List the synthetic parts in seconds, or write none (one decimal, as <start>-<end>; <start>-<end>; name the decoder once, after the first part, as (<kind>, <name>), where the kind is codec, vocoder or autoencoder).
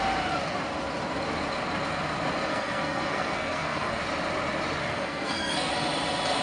2.5-4.0 (codec, SNAC); 4.8-5.7